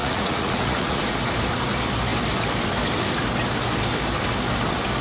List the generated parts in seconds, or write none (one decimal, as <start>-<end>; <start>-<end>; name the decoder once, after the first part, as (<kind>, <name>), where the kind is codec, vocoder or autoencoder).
0.0-1.0 (vocoder, Vocos)